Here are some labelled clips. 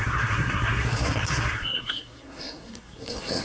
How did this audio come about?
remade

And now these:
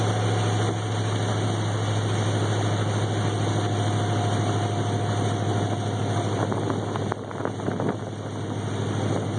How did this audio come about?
recorded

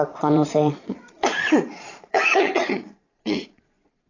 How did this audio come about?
remade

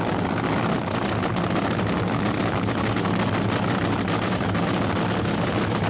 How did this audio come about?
recorded